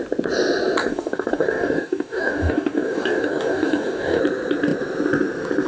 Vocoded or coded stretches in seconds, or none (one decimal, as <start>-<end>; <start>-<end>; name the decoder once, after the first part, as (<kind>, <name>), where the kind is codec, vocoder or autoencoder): 0.8-4.2 (codec, DAC)